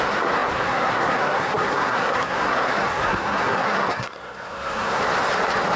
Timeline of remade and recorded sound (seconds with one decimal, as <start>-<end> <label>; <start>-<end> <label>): 0.0-5.0 remade; 5.0-5.8 recorded